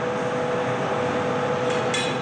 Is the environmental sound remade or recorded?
recorded